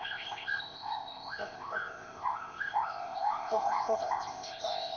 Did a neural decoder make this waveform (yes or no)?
yes